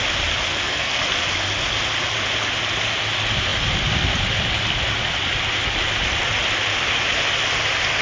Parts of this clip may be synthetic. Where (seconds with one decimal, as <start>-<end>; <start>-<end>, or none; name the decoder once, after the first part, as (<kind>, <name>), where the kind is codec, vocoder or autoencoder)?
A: 0.5-1.0 (codec, SNAC)